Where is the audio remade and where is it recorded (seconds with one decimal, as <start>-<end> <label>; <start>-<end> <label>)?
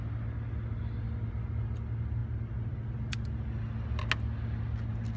0.0-5.2 recorded